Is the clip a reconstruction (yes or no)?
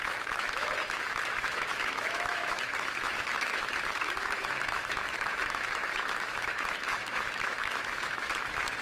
yes